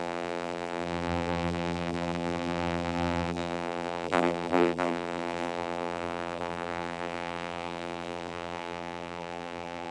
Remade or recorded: remade